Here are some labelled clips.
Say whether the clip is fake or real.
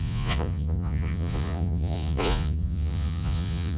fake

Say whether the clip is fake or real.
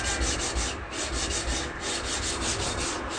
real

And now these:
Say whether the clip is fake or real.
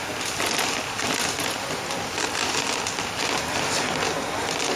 real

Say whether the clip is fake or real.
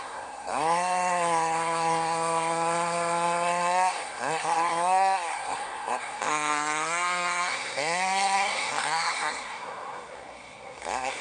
fake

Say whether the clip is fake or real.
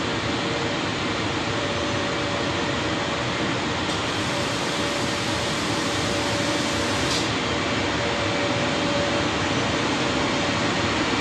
real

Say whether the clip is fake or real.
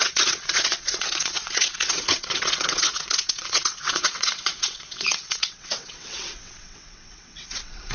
fake